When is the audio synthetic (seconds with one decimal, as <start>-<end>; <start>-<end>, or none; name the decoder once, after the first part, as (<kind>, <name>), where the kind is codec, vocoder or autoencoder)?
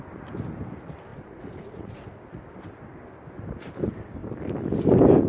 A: 1.1-2.1 (vocoder, Vocos)